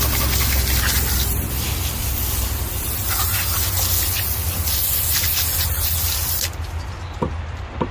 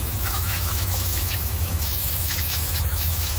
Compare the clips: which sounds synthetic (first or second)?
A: second